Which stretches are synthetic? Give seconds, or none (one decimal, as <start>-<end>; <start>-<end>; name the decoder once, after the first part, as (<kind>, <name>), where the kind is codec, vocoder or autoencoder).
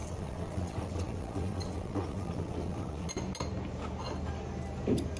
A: 0.0-3.1 (vocoder, WaveNeXt)